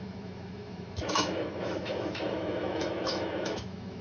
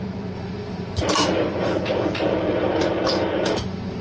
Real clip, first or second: second